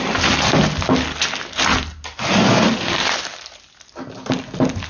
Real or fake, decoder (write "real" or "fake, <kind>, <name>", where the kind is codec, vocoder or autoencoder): real